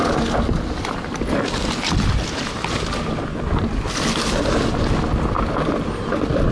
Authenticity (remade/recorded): recorded